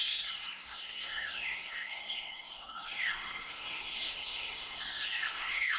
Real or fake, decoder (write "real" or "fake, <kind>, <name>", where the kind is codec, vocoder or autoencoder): fake, codec, SNAC